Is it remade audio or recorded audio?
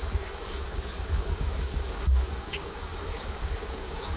remade